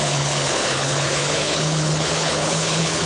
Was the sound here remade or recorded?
remade